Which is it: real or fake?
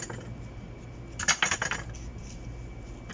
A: real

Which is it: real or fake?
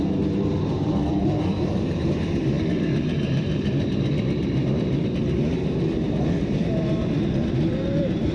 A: fake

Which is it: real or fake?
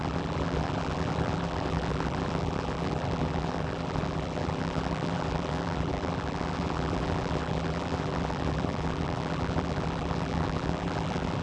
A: fake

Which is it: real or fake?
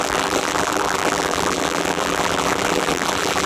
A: fake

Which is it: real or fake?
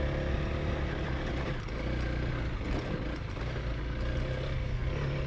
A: real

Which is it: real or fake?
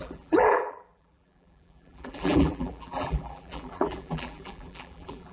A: fake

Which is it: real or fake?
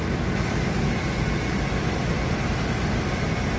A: fake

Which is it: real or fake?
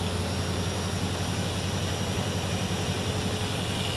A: real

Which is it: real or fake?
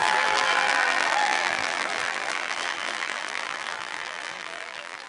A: fake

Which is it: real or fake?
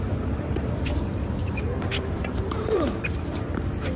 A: fake